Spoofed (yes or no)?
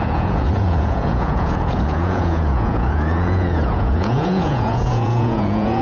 yes